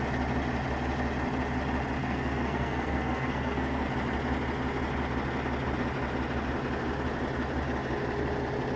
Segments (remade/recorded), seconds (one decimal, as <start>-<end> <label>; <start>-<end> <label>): 0.0-2.0 recorded; 2.0-3.9 remade; 3.9-8.8 recorded